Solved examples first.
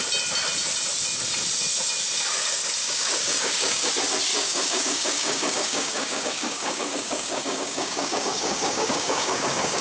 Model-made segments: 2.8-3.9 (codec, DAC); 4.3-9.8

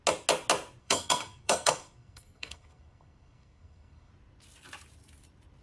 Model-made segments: 0.8-4.1 (codec, SNAC)

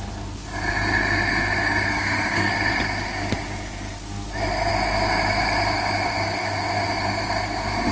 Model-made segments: 1.9-2.5 (codec, SNAC)

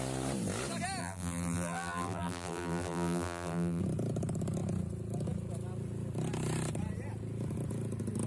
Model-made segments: 1.0-3.8 (vocoder, BigVGAN v2)

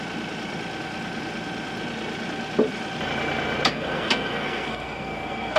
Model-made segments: 3.7-5.6 (codec, SNAC)

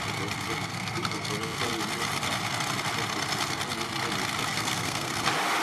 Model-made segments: 0.7-1.3 (codec, SNAC); 4.5-5.1